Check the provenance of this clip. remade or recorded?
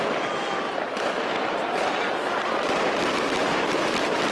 recorded